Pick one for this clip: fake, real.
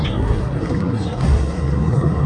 fake